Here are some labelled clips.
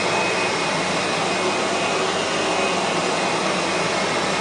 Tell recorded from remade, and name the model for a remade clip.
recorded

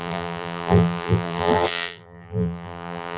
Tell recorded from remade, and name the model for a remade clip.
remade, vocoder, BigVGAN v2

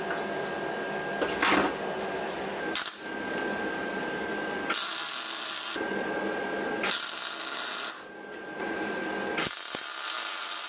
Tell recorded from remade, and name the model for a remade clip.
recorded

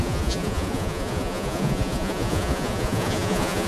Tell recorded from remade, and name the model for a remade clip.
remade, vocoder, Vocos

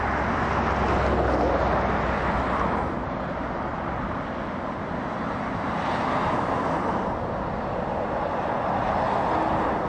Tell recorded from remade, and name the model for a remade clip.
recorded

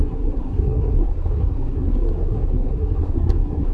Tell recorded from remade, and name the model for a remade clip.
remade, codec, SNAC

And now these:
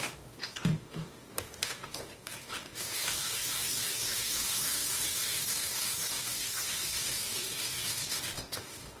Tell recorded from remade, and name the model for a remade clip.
remade, codec, DAC